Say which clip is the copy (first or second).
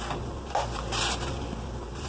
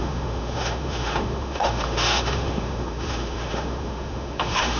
second